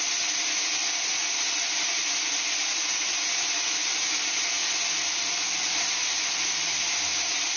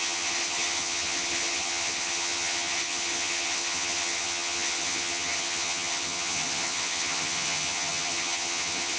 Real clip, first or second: first